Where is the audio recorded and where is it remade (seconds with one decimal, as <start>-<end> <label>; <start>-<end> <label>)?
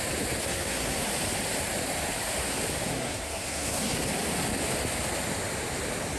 0.0-0.4 recorded; 0.4-1.1 remade; 1.1-2.9 recorded; 2.9-4.1 remade; 4.1-6.2 recorded